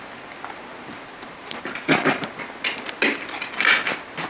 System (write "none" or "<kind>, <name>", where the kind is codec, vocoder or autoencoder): none